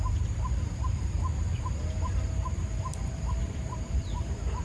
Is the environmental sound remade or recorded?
remade